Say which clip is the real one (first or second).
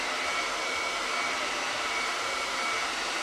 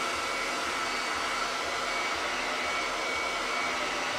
second